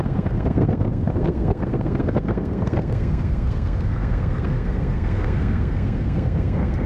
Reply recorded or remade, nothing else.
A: remade